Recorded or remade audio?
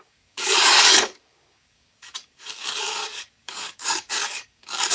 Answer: remade